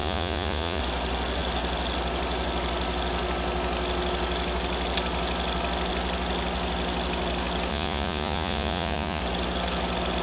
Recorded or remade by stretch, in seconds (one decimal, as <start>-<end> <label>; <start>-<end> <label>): 0.0-0.8 remade; 0.8-7.7 recorded; 7.7-9.2 remade; 9.2-10.2 recorded